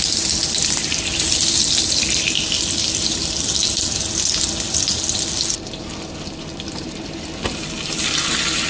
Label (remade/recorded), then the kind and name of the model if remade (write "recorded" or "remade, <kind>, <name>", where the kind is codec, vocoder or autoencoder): recorded